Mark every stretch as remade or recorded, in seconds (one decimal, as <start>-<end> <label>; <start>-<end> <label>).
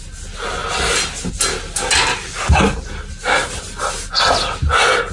0.0-5.1 recorded